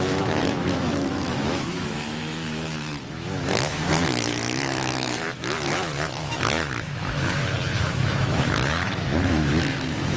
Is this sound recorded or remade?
remade